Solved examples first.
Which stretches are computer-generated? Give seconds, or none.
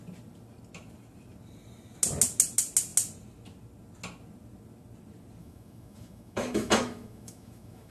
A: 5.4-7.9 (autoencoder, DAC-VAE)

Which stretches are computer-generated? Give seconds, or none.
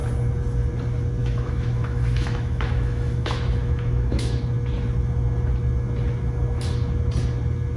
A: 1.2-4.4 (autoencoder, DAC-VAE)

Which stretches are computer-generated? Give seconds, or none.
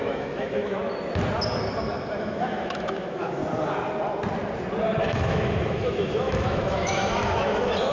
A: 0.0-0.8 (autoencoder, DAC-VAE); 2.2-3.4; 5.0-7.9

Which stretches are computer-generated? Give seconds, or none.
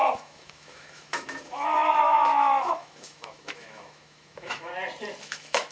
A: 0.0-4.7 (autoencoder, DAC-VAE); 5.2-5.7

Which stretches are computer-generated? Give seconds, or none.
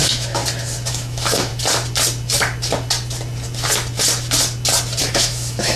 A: 0.0-0.4 (autoencoder, DAC-VAE); 0.9-1.5; 5.0-5.8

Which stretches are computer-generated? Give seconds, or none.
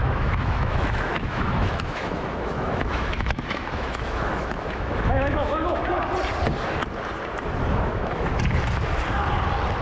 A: 0.0-5.8 (autoencoder, DAC-VAE); 7.7-8.3